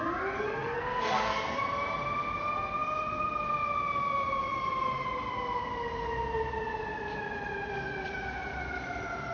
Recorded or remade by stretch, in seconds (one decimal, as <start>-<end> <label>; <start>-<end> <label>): 0.0-0.4 recorded; 0.4-1.6 remade; 1.6-9.3 recorded